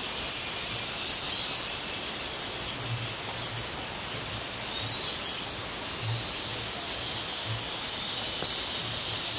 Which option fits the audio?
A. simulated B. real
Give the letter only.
B